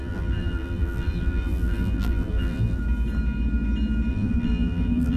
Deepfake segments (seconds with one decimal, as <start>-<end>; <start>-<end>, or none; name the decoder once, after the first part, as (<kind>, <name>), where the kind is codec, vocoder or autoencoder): 0.0-2.8 (vocoder, BigVGAN v2); 4.1-5.2